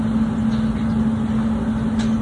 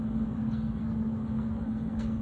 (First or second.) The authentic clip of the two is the first